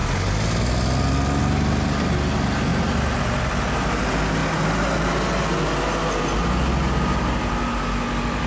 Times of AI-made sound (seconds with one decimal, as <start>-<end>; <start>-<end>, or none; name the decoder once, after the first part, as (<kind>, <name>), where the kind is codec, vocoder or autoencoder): none